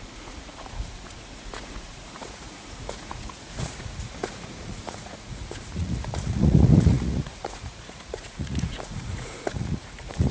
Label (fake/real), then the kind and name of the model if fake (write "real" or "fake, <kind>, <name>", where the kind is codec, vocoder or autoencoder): fake, vocoder, Vocos